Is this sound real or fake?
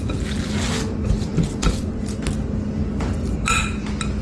real